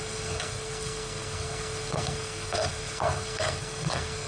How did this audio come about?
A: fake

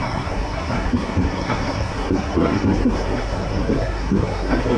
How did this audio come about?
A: fake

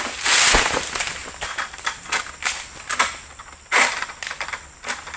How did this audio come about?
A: real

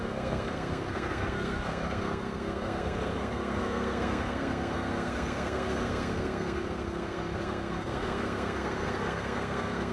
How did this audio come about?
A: fake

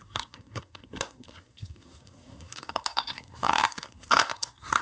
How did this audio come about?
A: fake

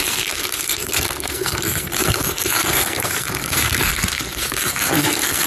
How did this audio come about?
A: fake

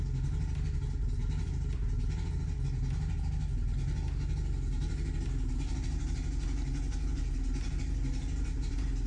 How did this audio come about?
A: real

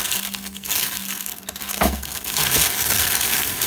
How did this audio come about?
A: fake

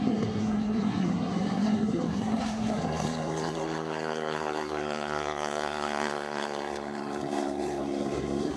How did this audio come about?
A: fake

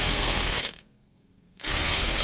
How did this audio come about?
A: fake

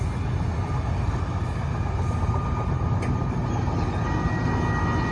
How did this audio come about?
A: real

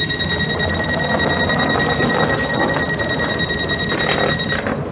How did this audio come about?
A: real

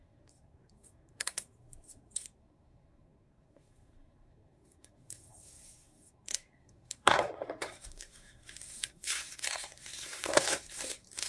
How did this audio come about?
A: fake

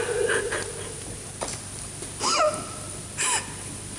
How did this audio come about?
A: real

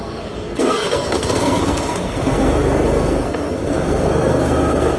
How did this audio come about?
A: fake